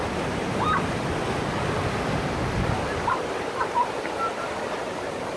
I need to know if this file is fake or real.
real